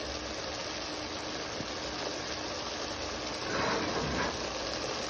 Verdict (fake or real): real